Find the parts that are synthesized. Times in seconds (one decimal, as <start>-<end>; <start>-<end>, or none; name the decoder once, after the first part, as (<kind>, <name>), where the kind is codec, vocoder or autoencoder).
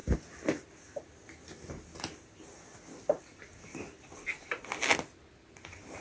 none